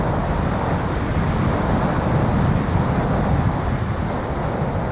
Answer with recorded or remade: recorded